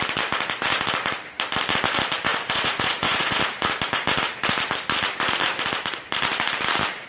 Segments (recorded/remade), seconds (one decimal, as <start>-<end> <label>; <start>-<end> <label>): 0.0-2.3 recorded; 2.3-3.4 remade; 3.4-7.1 recorded